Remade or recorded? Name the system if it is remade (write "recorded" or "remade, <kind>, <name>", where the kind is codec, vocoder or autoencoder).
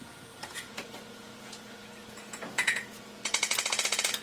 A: remade, vocoder, Vocos